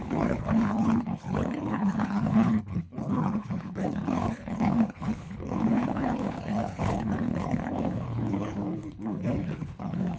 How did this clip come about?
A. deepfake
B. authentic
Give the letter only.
A